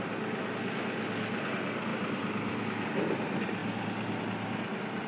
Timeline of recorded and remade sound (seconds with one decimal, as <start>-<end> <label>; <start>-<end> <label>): 0.0-1.9 recorded; 1.9-2.9 remade; 2.9-5.1 recorded